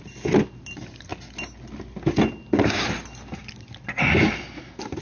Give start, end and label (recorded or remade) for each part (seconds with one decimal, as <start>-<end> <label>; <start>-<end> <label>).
0.0-5.0 recorded